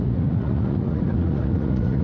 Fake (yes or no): yes